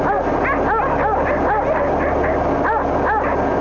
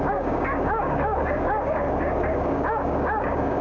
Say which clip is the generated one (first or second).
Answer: second